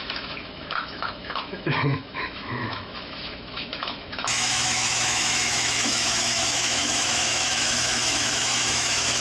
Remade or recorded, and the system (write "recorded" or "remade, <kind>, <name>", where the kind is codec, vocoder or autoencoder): remade, autoencoder, DAC-VAE